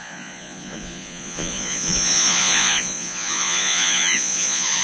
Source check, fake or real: fake